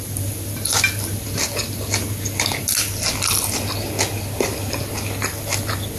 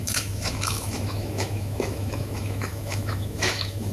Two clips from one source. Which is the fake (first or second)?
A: second